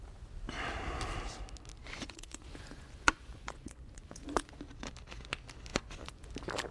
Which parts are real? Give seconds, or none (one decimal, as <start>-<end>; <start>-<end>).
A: 0.0-1.8; 4.6-5.7; 6.3-6.7